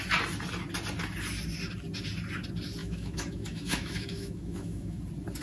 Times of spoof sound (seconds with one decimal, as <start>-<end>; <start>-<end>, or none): 2.8-5.0